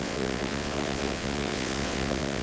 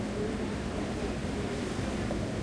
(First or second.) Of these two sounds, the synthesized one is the first